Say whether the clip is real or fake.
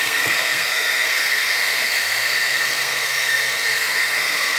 fake